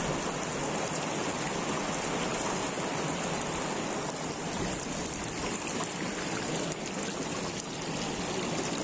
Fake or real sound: real